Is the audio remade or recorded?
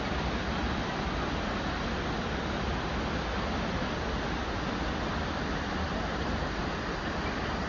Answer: recorded